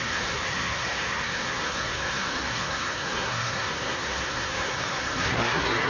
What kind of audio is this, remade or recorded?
remade